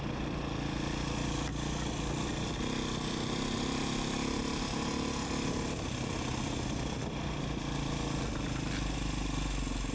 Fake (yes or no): no